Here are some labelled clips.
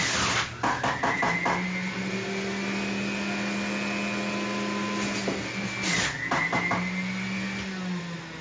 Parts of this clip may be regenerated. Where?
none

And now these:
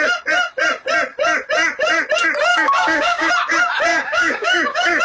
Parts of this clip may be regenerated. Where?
2.5-3.3 (codec, DAC); 3.9-5.0

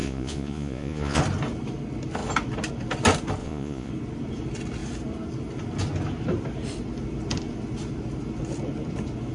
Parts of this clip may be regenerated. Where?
0.0-1.2 (vocoder, Vocos); 3.4-3.9

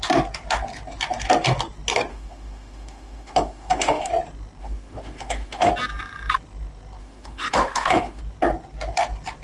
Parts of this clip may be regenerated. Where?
2.1-4.1 (autoencoder, DAC-VAE); 4.6-5.7; 7.0-8.2

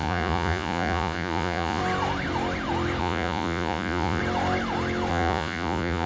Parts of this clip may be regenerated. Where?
0.0-1.8 (vocoder, Vocos); 3.0-4.2; 5.1-6.1

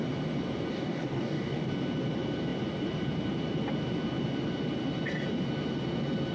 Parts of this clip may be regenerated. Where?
0.7-1.7 (codec, DAC)

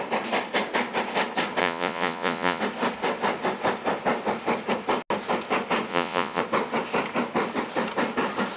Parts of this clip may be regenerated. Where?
1.6-2.6 (vocoder, Vocos); 5.9-6.4

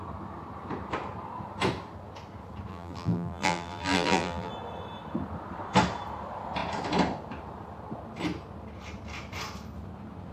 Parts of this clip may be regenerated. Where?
2.7-4.5 (vocoder, BigVGAN v2)